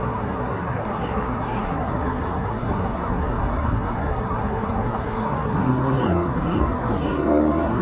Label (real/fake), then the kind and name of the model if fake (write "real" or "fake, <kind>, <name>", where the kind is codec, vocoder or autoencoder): fake, codec, SNAC